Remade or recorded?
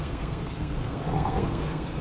remade